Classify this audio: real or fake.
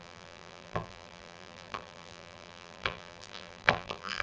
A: fake